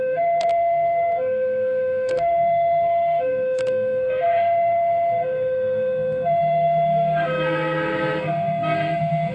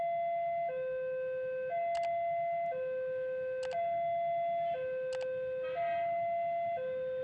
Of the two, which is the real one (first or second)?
second